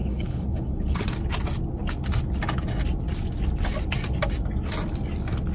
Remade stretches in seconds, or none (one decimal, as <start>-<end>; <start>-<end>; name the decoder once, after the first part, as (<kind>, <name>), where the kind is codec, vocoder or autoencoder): 0.0-1.1 (codec, HILCodec)

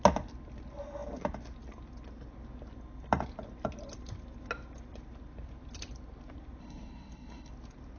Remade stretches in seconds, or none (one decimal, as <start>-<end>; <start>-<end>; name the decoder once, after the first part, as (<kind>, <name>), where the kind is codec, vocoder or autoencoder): 6.6-7.5 (codec, HILCodec)

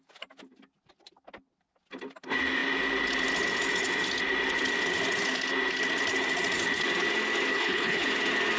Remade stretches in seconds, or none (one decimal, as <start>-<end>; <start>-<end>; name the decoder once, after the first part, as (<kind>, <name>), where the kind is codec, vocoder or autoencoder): 7.5-8.1 (codec, HILCodec)

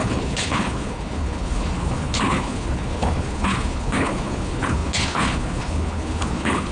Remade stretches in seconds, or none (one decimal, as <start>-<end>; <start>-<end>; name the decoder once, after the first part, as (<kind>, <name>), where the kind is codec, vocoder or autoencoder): 0.0-6.7 (codec, HILCodec)